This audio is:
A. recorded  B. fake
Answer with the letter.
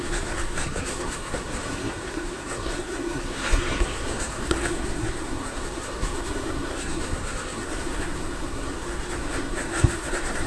B